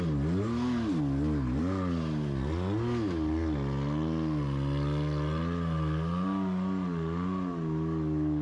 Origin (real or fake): real